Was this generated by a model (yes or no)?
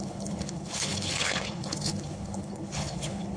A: yes